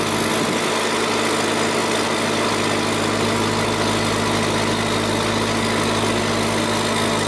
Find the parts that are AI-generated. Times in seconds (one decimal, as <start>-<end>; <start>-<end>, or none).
none